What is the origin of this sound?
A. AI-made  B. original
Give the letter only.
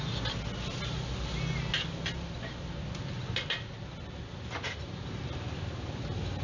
B